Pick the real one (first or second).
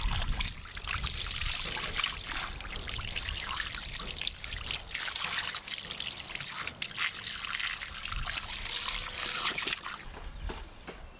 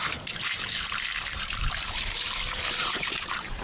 first